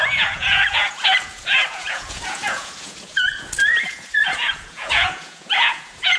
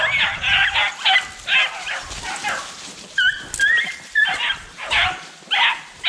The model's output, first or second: first